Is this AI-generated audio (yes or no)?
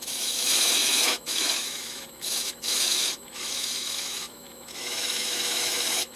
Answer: yes